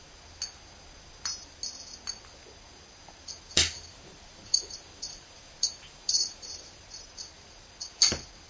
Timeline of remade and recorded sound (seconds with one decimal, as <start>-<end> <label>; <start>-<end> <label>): 0.0-3.9 recorded; 3.9-6.8 remade; 6.8-8.5 recorded